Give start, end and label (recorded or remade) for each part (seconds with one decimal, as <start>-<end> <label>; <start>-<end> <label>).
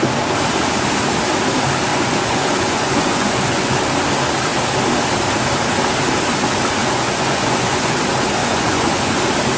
0.0-1.9 recorded; 1.9-3.8 remade; 3.8-6.8 recorded; 6.8-8.0 remade; 8.0-8.4 recorded; 8.4-9.2 remade; 9.2-9.6 recorded